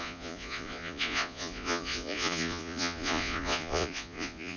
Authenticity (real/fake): fake